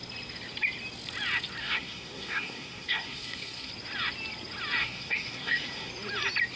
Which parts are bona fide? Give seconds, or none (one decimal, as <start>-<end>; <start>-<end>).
0.0-1.6; 3.7-4.8; 5.9-6.6